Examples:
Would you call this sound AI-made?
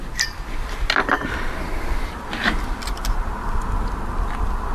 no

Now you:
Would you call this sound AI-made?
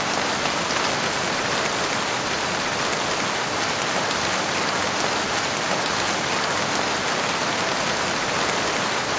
no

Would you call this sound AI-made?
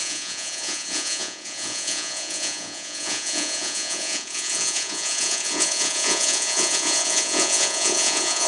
yes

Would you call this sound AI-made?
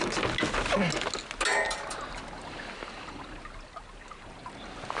no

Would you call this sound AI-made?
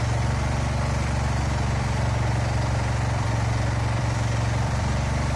yes